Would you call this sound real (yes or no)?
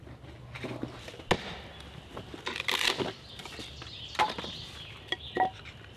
yes